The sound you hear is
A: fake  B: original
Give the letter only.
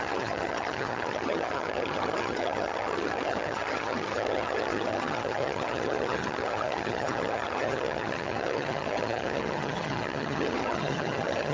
A